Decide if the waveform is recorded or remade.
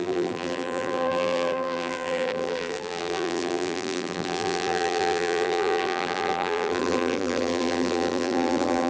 remade